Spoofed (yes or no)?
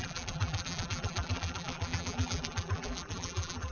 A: yes